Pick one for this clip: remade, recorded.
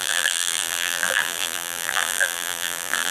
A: remade